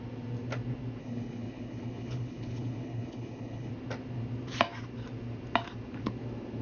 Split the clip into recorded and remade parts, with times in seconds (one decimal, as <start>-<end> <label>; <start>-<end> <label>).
0.0-1.0 recorded; 1.0-3.7 remade; 3.7-6.6 recorded